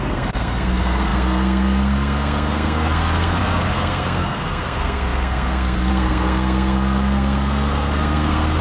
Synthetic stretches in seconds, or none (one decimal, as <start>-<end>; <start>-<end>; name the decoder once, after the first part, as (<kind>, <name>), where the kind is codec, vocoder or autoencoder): 0.0-8.6 (codec, SNAC)